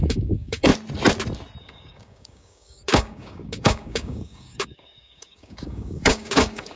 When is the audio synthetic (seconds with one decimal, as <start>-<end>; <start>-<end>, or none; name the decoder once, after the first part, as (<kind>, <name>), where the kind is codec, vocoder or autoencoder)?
0.0-0.7 (codec, DAC); 1.6-6.8